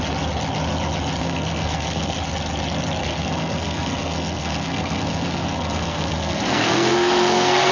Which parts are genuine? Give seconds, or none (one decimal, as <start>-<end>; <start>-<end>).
0.0-1.2; 2.2-3.0